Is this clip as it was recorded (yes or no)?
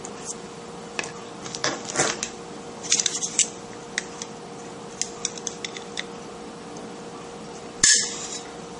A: yes